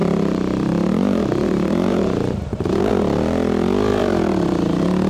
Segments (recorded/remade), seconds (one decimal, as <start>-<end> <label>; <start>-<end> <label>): 0.0-2.9 remade; 2.9-3.9 recorded; 3.9-5.1 remade